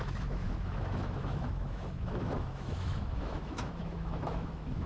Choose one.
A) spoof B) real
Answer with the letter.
A